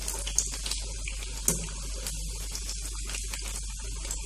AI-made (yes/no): no